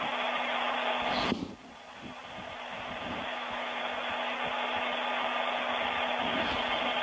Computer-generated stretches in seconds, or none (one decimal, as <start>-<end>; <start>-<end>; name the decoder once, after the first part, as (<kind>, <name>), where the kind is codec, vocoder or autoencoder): 3.3-3.8 (autoencoder, DAC-VAE)